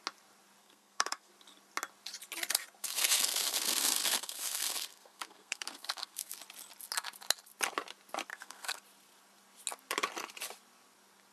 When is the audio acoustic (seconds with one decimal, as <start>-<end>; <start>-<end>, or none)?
0.0-0.6; 1.3-2.8; 6.4-8.3; 8.8-11.3